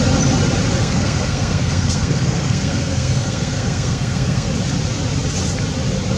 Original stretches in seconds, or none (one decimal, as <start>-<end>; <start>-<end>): 0.0-0.8; 4.5-6.2